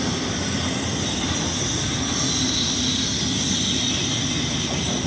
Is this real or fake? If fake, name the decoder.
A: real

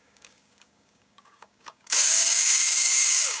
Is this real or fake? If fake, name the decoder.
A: fake, codec, DAC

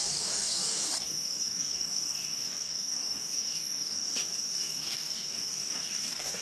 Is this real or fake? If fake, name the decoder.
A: fake, codec, DAC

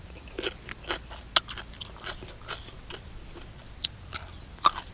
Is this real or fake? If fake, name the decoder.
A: real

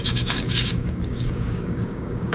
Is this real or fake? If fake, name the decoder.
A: fake, codec, DAC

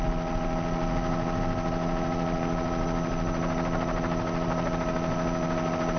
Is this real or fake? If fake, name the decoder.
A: real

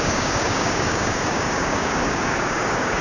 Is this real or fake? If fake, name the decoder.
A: fake, codec, DAC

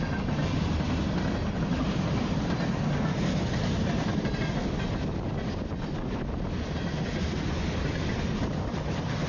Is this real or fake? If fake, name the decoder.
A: real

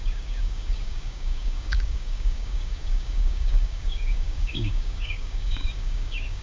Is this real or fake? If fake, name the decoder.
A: fake, codec, DAC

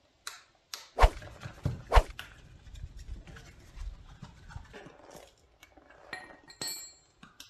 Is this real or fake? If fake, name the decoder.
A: real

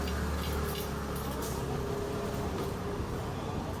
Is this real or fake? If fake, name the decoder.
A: real